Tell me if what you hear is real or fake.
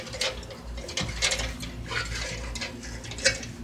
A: real